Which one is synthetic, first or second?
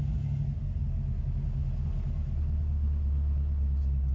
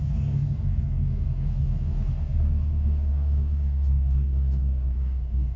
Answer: second